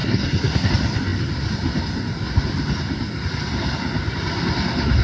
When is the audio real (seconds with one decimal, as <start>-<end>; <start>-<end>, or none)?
0.7-5.0